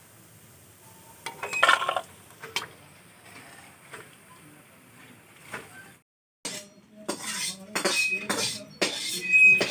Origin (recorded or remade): recorded